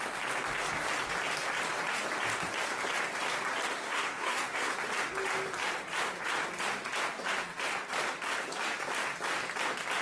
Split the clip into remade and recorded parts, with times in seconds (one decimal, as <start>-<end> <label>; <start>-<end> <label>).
0.0-3.8 recorded; 3.8-4.7 remade; 4.7-10.0 recorded